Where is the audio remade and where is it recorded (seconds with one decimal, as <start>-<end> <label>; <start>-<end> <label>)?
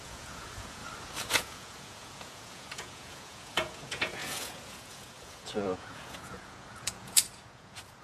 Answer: 0.0-0.8 remade; 0.8-1.3 recorded; 1.3-8.0 remade